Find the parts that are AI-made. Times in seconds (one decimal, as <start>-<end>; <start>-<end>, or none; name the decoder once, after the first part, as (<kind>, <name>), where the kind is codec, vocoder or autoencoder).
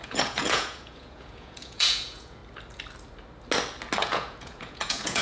0.0-2.4 (vocoder, Vocos); 4.0-5.2